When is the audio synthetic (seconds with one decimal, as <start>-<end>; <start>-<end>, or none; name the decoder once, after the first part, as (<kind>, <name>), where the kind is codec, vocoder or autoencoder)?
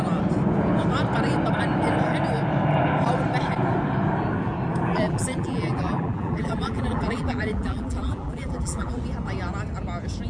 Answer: 4.9-9.0 (vocoder, BigVGAN v2)